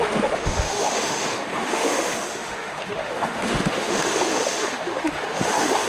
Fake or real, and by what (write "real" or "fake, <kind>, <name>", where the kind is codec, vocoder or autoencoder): fake, autoencoder, DAC-VAE